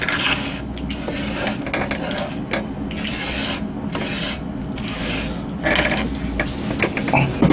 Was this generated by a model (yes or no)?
no